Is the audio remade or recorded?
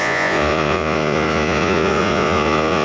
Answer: remade